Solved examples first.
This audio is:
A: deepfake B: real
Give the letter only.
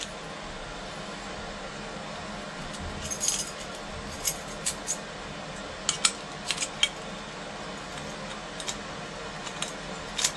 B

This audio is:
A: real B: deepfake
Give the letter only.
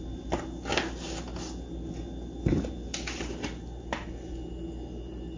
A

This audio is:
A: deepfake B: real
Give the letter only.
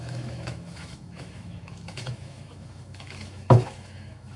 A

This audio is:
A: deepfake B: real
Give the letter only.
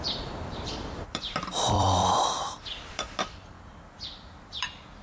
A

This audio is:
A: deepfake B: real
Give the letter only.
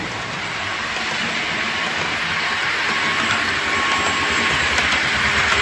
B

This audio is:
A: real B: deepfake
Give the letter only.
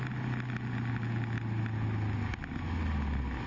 A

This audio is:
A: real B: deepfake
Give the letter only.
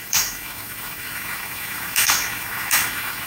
B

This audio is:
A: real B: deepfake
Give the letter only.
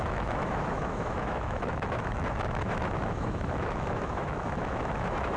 B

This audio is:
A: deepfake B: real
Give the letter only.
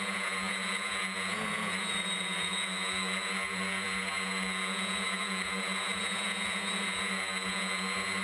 A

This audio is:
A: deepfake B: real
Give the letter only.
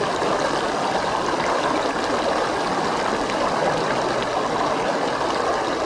B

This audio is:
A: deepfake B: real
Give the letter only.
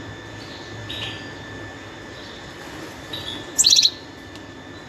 B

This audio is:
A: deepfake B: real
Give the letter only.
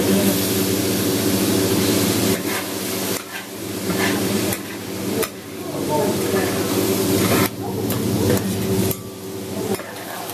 B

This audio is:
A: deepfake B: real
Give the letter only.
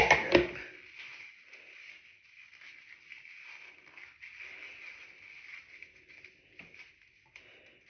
B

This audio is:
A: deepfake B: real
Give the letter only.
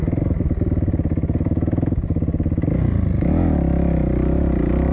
B